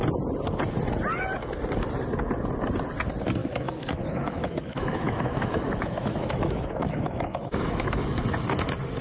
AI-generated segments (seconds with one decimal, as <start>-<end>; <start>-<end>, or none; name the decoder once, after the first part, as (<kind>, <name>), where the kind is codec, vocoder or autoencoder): 3.4-8.0 (autoencoder, DAC-VAE)